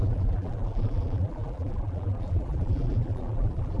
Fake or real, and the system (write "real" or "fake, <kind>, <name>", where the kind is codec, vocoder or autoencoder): fake, vocoder, BigVGAN v2